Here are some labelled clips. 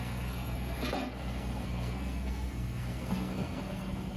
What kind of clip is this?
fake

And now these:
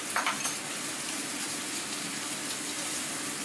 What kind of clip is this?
real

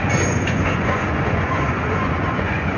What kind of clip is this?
fake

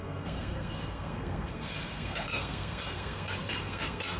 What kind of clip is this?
fake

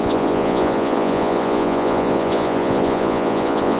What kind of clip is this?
fake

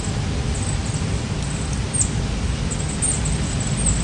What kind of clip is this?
real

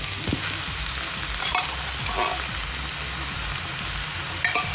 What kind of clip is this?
real